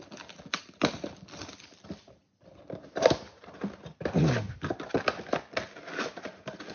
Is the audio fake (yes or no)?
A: no